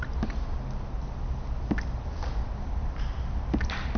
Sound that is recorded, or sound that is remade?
recorded